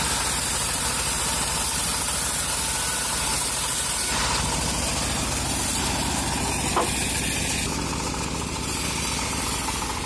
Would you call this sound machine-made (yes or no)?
no